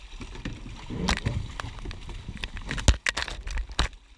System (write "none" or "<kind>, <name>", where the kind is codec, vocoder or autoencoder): none